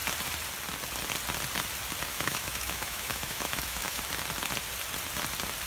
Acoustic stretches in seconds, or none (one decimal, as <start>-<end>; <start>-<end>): 0.0-2.1; 4.0-5.7

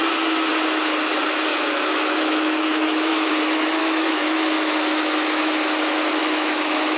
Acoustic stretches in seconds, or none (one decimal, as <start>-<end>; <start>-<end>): 0.0-1.5; 3.3-3.8; 5.4-6.2

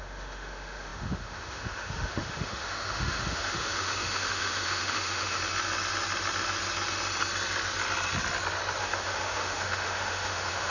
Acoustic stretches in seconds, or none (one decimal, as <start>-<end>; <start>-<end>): 5.4-8.8

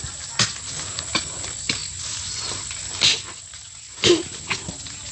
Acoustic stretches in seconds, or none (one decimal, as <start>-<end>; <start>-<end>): 0.0-5.1

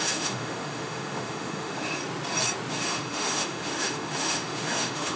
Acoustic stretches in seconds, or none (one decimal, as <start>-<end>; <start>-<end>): 2.0-2.7